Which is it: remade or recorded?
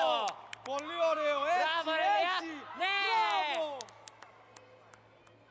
recorded